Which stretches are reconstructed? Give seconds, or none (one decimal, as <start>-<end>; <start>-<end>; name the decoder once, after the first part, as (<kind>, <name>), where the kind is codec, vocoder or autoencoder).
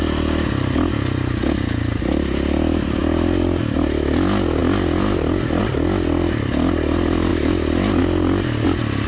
none